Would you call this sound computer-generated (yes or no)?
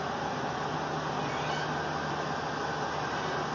no